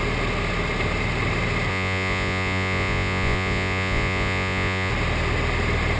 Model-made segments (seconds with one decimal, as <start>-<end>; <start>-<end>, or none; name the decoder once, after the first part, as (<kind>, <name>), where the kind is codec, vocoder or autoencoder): 1.7-4.9 (vocoder, Vocos)